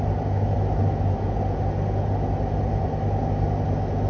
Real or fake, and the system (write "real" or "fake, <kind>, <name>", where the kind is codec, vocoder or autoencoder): real